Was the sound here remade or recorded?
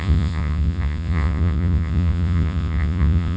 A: remade